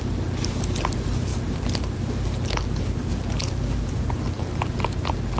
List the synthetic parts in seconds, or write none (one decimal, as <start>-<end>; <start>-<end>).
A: none